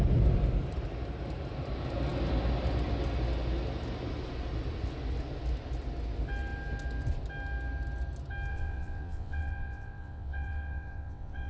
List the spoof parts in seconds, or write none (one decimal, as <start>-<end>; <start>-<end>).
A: 8.5-11.5